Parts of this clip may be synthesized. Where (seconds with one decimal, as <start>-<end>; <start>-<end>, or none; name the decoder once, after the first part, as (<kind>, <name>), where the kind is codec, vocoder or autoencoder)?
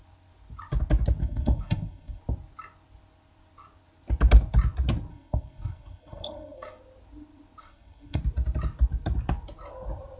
1.2-2.2 (codec, SNAC); 5.1-6.8; 7.6-8.2